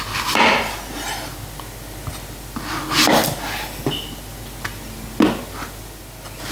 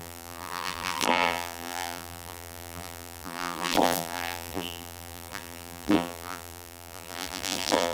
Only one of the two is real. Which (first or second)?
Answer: first